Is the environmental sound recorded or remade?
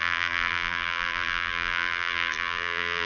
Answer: remade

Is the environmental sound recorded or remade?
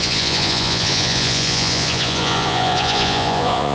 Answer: remade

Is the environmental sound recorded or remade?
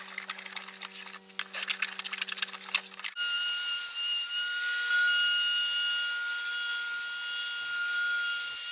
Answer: recorded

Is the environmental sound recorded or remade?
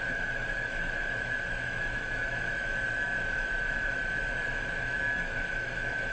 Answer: remade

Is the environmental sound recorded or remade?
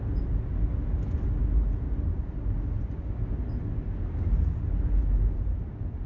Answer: recorded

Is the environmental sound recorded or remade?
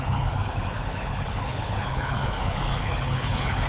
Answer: remade